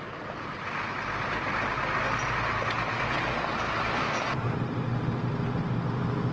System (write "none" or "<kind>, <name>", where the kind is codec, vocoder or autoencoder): none